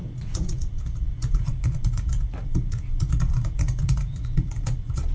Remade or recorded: remade